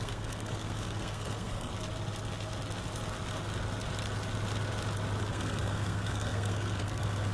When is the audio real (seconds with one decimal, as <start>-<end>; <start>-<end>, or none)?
1.7-5.2